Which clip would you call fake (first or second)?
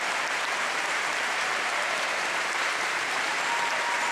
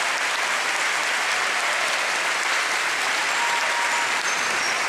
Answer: first